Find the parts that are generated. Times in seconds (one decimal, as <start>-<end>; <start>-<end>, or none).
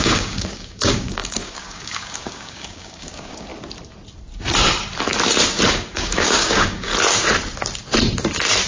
0.0-3.5; 5.7-6.9